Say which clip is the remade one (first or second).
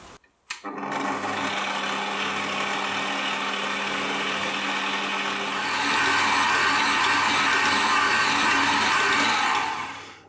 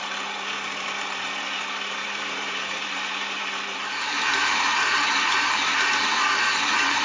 second